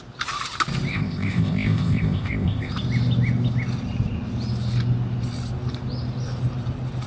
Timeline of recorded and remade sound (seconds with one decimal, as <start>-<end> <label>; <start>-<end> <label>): 0.0-0.9 recorded; 0.9-2.7 remade; 2.7-7.1 recorded